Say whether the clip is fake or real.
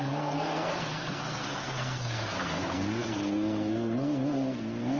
fake